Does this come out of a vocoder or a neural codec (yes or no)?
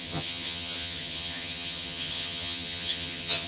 yes